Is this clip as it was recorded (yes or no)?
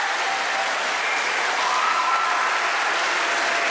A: yes